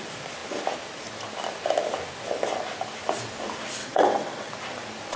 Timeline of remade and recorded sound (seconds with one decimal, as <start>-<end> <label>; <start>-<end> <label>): 0.0-3.8 recorded; 3.8-4.5 remade; 4.5-5.2 recorded